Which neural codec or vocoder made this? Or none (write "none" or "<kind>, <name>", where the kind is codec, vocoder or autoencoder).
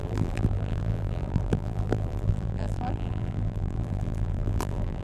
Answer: vocoder, BigVGAN v2